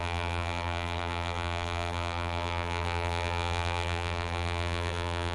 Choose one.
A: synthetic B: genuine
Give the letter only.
A